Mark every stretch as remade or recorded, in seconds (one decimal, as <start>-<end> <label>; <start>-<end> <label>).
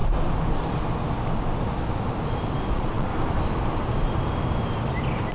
0.0-2.7 recorded; 2.7-3.1 remade; 3.1-5.3 recorded